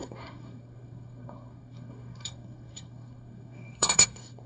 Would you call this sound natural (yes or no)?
no